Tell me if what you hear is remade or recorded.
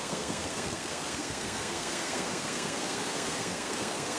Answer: remade